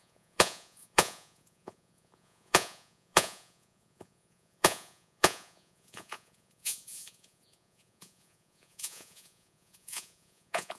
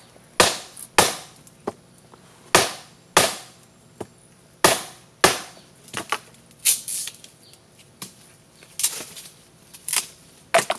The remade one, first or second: first